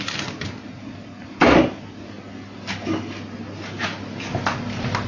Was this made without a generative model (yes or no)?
yes